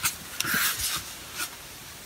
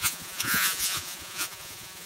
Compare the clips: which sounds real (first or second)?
first